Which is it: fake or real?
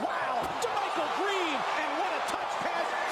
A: real